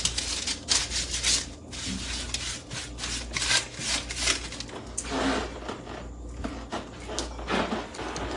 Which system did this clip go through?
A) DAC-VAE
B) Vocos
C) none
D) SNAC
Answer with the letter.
C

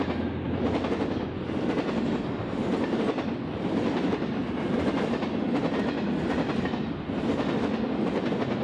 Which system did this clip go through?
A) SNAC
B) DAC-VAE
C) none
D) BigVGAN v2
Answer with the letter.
C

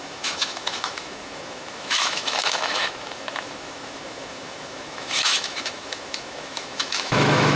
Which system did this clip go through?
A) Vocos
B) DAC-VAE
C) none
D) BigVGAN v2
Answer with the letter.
B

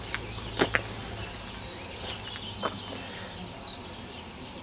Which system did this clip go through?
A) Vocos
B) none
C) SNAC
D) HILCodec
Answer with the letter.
B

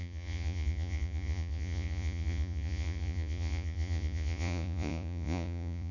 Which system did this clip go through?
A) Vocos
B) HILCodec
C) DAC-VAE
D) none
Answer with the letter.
A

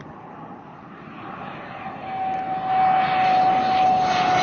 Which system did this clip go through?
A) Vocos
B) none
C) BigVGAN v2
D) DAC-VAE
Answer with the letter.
B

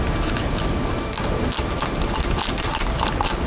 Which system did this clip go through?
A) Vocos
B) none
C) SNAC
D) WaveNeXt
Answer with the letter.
B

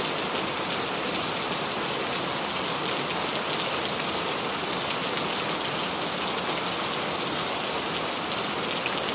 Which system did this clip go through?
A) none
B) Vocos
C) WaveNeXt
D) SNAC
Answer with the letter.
A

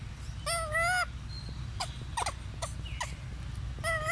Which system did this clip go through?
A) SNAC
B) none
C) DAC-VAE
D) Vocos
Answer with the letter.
B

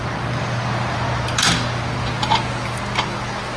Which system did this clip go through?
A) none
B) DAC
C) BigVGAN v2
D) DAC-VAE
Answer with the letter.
A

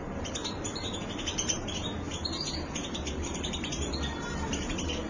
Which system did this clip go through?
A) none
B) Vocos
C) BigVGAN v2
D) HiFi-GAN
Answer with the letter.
C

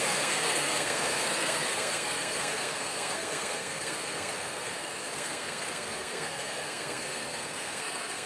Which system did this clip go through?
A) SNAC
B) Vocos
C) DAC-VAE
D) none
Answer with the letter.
A